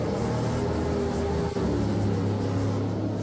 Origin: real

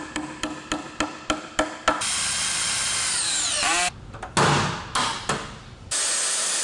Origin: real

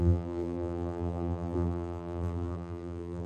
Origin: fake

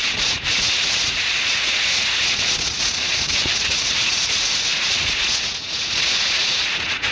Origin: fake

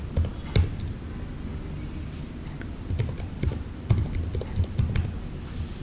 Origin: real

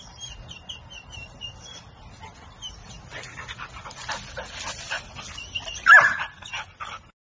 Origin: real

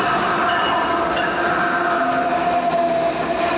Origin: real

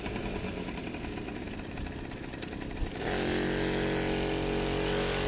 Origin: real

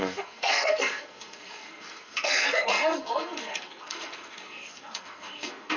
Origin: fake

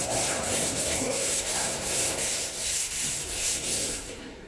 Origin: fake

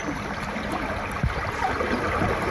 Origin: real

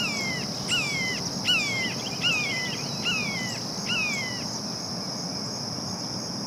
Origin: real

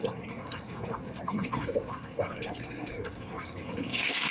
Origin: fake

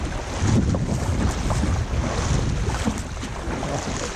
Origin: real